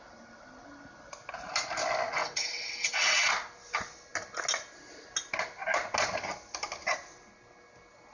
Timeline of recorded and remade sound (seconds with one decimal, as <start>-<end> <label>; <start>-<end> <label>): 0.0-2.2 recorded; 2.2-3.3 remade; 3.3-8.1 recorded